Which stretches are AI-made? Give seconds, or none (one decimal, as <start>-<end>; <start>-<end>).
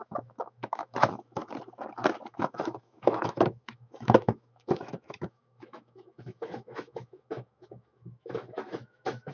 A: 0.0-1.4; 2.3-9.3